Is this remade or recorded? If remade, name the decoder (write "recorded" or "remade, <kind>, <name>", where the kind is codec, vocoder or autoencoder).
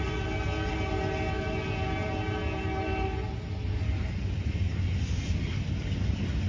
recorded